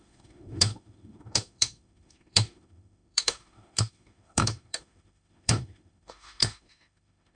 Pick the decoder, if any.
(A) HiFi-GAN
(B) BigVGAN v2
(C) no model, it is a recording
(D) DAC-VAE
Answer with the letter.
D